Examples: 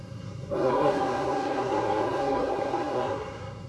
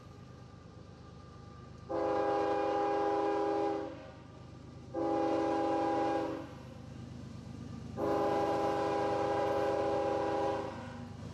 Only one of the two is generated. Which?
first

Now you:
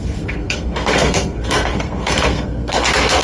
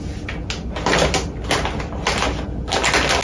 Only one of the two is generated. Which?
first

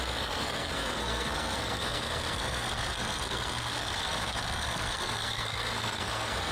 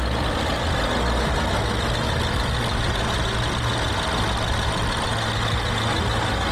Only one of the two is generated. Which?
first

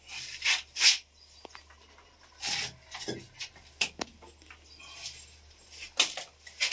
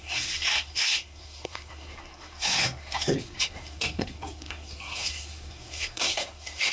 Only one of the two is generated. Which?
second